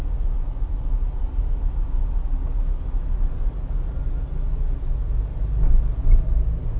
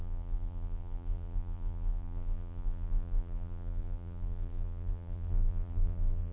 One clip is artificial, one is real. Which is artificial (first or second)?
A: second